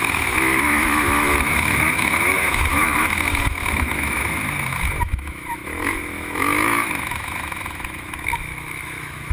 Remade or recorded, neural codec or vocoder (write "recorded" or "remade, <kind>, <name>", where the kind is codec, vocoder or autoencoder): remade, autoencoder, DAC-VAE